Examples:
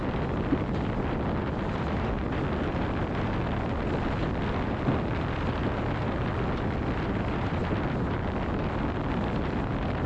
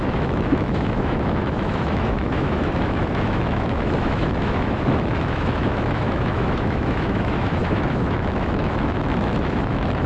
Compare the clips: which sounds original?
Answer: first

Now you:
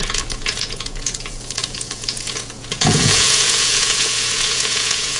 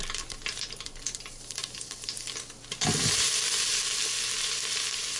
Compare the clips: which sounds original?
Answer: second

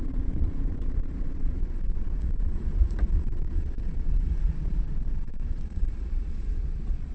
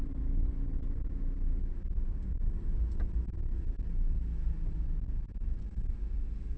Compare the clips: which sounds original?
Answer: second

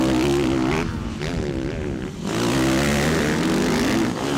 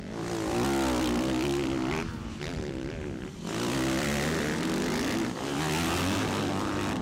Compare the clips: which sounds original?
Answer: first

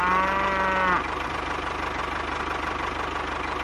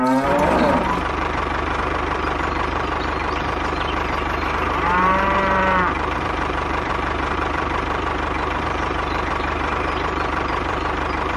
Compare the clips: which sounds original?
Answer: first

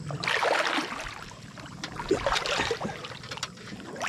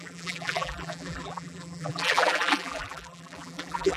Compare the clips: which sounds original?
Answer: first